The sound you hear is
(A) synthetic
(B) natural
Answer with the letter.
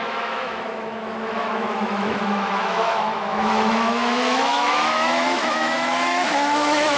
A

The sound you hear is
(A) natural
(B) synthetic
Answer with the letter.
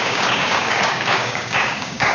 B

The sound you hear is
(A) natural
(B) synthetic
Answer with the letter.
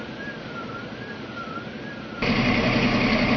A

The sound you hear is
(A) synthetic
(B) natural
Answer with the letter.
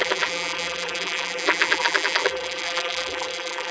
A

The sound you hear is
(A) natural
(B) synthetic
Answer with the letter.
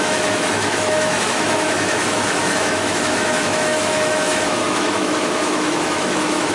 B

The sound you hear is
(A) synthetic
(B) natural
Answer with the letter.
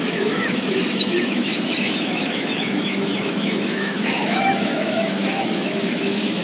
A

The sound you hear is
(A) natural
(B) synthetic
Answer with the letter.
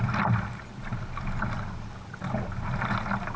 A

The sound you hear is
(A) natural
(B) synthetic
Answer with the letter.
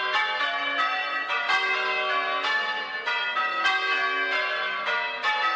A